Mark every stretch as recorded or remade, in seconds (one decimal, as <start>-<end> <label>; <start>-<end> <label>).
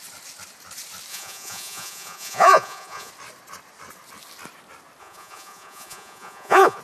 0.0-1.1 recorded; 1.1-3.1 remade; 3.1-5.0 recorded; 5.0-6.8 remade